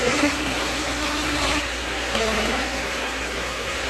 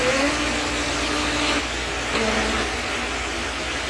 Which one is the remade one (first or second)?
first